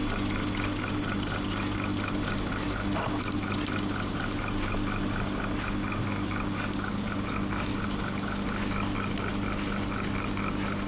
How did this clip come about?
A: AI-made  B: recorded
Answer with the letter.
B